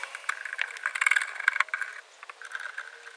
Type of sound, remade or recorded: recorded